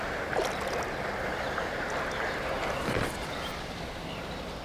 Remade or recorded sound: recorded